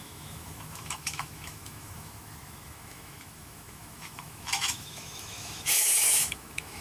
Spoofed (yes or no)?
yes